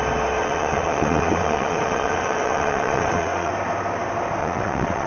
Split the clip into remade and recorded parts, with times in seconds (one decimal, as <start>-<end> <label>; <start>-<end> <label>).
0.0-0.4 recorded; 0.4-3.5 remade; 3.5-4.4 recorded; 4.4-5.1 remade